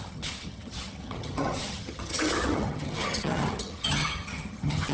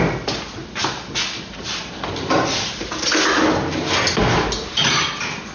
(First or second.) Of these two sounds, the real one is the second